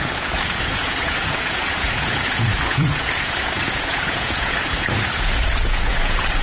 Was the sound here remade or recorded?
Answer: remade